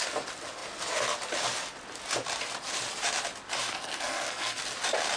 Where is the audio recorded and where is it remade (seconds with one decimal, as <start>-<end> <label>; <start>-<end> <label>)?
0.0-3.7 recorded; 3.7-4.6 remade; 4.6-5.2 recorded